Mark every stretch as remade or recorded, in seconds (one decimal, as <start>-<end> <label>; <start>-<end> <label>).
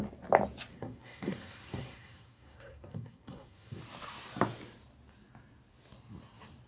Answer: 0.0-0.7 recorded; 0.7-3.8 remade; 3.8-6.7 recorded